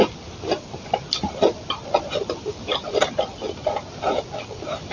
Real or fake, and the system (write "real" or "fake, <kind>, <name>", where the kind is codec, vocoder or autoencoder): real